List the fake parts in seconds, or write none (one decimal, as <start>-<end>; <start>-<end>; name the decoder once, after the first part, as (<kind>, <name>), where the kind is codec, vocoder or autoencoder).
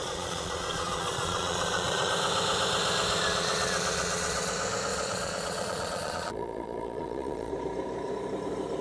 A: 0.0-2.1 (vocoder, Vocos); 3.2-4.5; 4.9-7.5